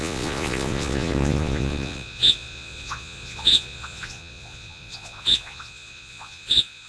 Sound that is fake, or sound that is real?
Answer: fake